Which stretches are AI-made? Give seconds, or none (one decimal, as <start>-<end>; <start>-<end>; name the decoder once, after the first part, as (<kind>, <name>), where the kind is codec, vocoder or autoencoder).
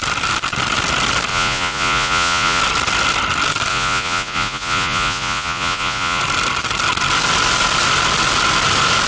1.3-2.6 (vocoder, Vocos); 3.7-6.2